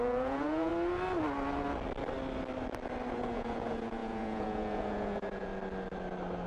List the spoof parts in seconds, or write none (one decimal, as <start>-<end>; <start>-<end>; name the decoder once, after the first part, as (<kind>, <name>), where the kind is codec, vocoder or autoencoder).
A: 0.0-0.7 (vocoder, Vocos); 3.1-5.5